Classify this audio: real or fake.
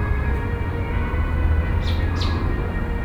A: real